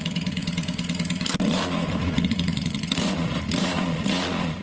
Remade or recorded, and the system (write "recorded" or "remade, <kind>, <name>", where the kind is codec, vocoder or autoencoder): remade, vocoder, Vocos